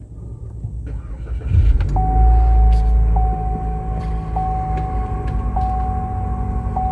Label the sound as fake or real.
real